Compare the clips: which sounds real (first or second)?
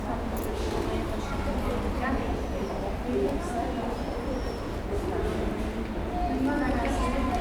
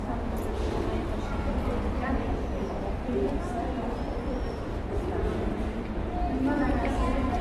first